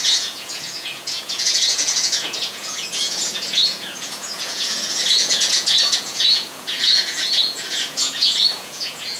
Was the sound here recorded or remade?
remade